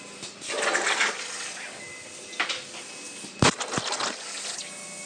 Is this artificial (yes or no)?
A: no